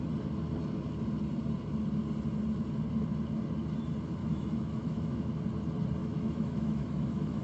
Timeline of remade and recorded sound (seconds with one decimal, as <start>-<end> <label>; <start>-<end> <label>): 0.0-4.2 recorded; 4.2-5.3 remade; 5.3-6.0 recorded; 6.0-7.4 remade